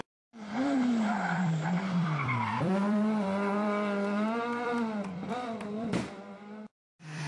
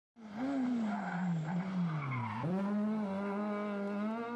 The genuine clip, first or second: second